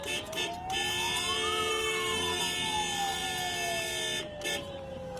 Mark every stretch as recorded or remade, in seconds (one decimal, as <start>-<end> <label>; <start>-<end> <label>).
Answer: 0.0-1.7 recorded; 1.7-2.4 remade; 2.4-5.2 recorded